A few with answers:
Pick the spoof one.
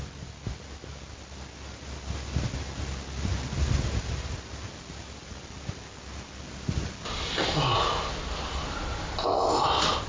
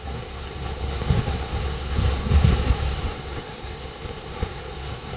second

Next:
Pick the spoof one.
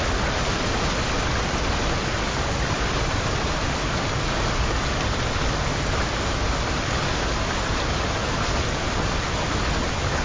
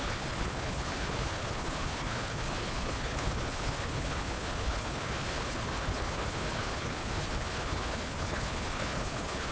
second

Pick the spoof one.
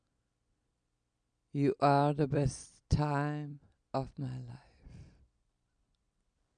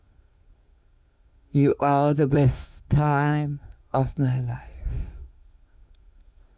second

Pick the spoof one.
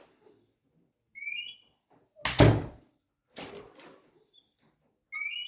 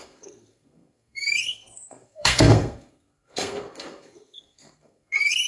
second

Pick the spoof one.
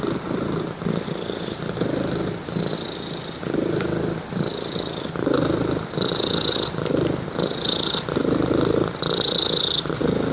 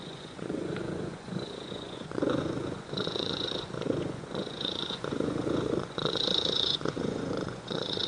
second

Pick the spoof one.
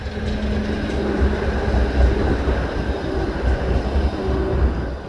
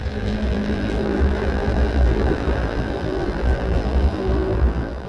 second